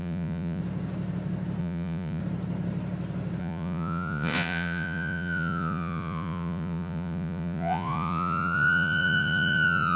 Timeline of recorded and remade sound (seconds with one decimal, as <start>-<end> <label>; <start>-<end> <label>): 0.0-0.6 remade; 0.6-1.6 recorded; 1.6-2.2 remade; 2.2-3.4 recorded; 3.4-10.0 remade